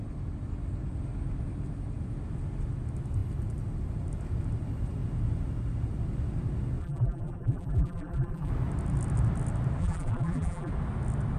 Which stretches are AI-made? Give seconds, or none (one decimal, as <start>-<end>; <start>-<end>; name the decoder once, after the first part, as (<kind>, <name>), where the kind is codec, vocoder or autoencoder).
6.8-8.5 (vocoder, BigVGAN v2); 9.8-10.7